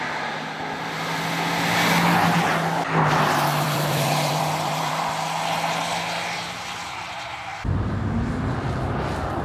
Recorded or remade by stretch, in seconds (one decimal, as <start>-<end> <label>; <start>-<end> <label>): 0.0-3.5 recorded; 3.5-5.1 remade; 5.1-7.5 recorded; 7.5-8.3 remade; 8.3-9.4 recorded